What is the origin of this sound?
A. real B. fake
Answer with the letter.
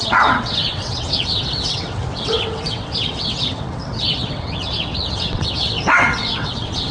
B